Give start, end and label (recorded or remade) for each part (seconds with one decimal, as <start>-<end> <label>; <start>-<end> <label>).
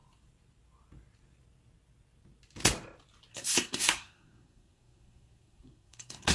0.0-3.3 recorded; 3.3-6.3 remade